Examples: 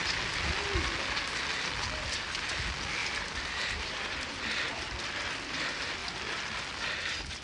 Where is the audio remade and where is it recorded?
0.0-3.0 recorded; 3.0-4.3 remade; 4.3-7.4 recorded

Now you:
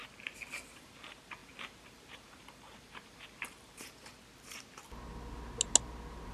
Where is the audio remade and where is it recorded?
0.0-0.6 recorded; 0.6-4.1 remade; 4.1-6.3 recorded

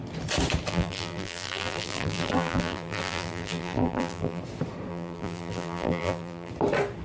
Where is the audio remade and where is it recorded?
0.0-0.7 recorded; 0.7-4.4 remade; 4.4-4.9 recorded; 4.9-6.5 remade; 6.5-7.0 recorded